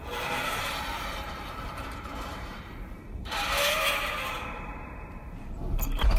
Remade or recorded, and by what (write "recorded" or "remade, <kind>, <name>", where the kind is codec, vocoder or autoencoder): remade, vocoder, BigVGAN v2